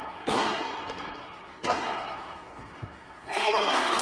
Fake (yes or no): yes